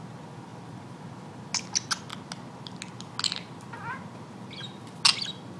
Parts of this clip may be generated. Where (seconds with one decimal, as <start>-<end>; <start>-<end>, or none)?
none